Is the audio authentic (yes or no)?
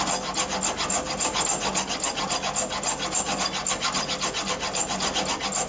yes